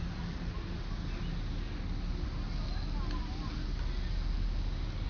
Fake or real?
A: real